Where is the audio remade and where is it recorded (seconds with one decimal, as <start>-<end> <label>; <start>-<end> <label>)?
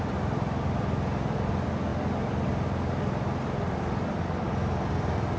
0.0-5.4 recorded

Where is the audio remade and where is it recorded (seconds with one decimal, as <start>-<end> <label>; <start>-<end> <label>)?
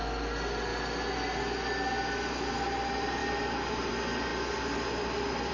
0.0-5.5 recorded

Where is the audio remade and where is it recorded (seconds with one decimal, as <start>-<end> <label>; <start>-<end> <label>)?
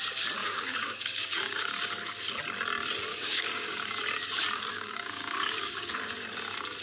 0.0-0.4 recorded; 0.4-1.8 remade; 1.8-3.1 recorded; 3.1-3.9 remade; 3.9-4.7 recorded; 4.7-5.9 remade; 5.9-6.8 recorded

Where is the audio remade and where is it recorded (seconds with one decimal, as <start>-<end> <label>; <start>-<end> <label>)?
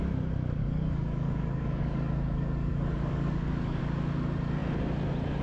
0.0-0.6 recorded; 0.6-3.8 remade; 3.8-5.4 recorded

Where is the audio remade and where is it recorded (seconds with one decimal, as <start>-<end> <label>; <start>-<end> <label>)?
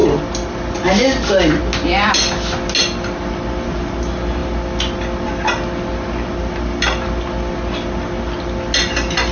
0.0-9.3 recorded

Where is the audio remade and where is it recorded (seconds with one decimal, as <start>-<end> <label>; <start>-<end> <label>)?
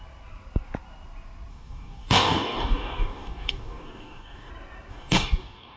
0.0-1.5 recorded; 1.5-4.5 remade; 4.5-4.9 recorded; 4.9-5.8 remade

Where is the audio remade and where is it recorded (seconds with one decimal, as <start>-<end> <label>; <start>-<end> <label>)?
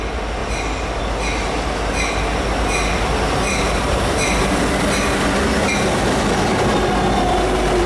0.0-7.9 recorded